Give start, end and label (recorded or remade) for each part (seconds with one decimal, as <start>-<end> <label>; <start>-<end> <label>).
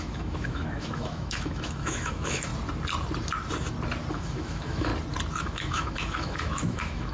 0.0-2.5 remade; 2.5-4.1 recorded; 4.1-4.9 remade; 4.9-5.4 recorded; 5.4-7.1 remade